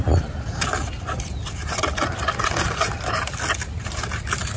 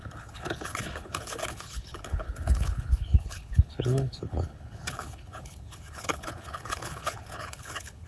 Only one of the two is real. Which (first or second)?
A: first